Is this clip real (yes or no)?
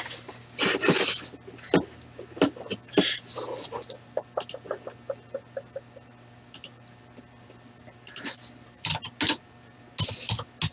yes